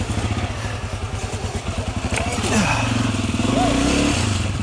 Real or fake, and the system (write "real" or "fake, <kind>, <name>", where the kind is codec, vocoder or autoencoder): real